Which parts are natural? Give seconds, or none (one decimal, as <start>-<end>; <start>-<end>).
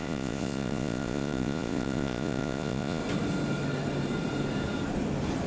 3.0-5.5